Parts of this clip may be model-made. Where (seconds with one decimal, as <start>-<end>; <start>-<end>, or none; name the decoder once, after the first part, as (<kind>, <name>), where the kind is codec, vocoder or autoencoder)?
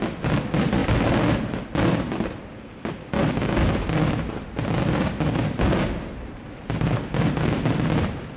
none